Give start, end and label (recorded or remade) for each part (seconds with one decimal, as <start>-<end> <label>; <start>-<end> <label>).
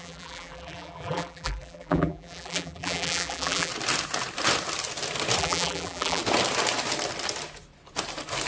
0.0-3.7 remade; 3.7-5.4 recorded; 5.4-6.2 remade; 6.2-8.5 recorded